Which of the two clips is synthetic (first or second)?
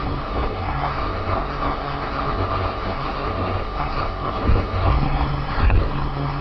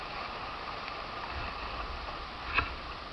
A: first